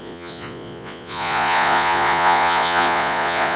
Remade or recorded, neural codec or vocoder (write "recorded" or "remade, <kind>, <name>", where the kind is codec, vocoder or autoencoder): remade, vocoder, Vocos